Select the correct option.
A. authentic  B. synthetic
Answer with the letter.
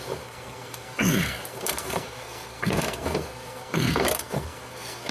B